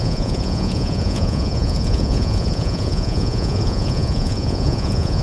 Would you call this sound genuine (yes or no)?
no